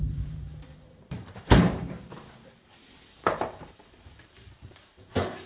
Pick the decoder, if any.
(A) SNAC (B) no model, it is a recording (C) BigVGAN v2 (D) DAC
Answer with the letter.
C